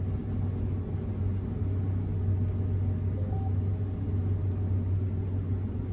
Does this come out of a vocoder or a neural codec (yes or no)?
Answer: no